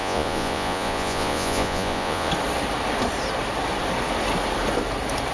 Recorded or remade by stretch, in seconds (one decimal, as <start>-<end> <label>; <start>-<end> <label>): 0.0-2.3 remade; 2.3-5.3 recorded